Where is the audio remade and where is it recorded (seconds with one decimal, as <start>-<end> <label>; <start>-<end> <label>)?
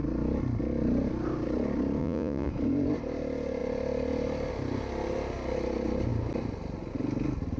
0.0-2.0 recorded; 2.0-2.5 remade; 2.5-7.6 recorded